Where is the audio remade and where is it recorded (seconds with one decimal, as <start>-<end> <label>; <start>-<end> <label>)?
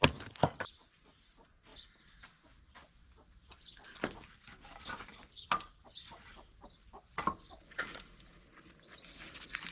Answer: 0.0-1.7 recorded; 1.7-2.6 remade; 2.6-9.7 recorded